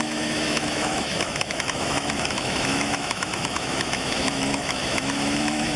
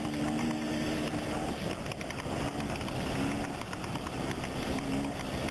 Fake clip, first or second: first